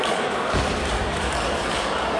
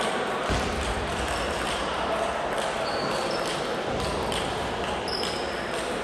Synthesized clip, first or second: first